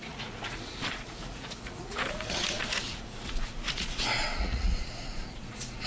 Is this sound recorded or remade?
remade